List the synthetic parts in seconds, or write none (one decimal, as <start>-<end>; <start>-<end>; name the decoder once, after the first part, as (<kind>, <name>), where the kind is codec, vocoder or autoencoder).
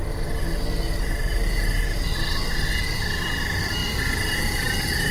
none